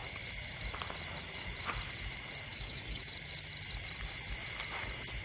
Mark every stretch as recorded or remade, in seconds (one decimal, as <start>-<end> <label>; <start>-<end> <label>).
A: 0.0-2.5 recorded; 2.5-3.1 remade; 3.1-5.2 recorded